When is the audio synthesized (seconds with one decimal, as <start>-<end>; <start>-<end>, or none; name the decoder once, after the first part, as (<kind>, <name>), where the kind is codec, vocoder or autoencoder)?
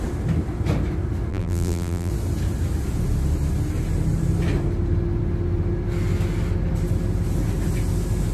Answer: 1.3-2.1 (vocoder, BigVGAN v2)